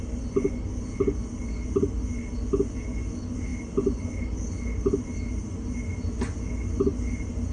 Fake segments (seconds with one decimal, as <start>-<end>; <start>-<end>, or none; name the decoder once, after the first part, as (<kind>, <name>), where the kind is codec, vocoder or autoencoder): none